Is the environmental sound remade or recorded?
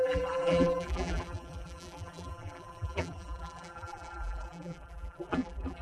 remade